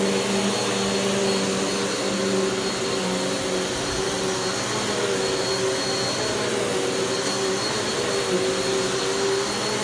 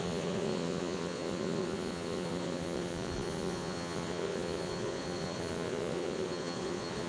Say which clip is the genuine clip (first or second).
first